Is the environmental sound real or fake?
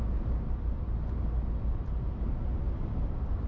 real